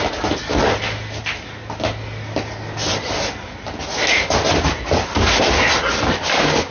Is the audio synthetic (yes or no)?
no